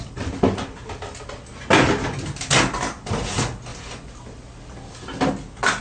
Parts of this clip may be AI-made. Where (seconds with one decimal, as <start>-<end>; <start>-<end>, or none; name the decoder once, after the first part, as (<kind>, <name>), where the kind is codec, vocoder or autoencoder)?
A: 3.7-5.3 (vocoder, BigVGAN v2)